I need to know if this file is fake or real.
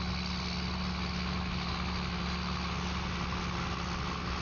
real